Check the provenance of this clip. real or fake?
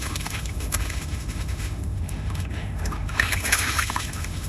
fake